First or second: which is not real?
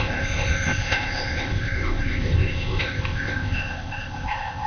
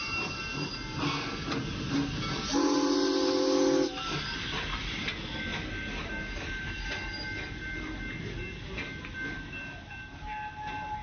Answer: first